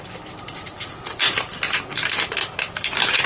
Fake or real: real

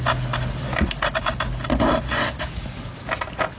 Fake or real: real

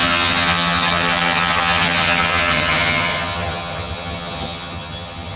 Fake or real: fake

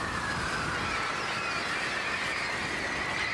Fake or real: real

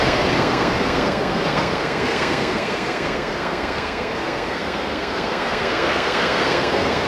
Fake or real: fake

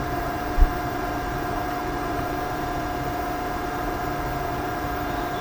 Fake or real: fake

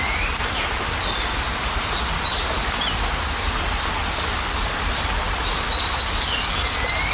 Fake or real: real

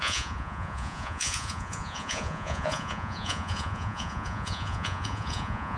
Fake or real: fake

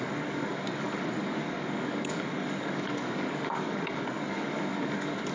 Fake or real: fake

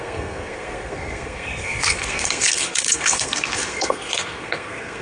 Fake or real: fake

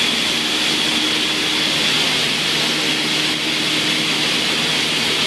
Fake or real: real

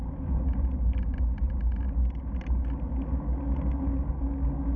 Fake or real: real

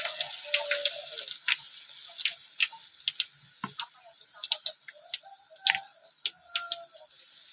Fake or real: real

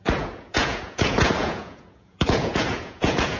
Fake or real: fake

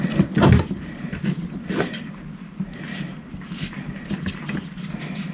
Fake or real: real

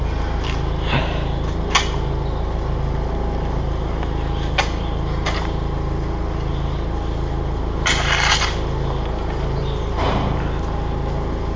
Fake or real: real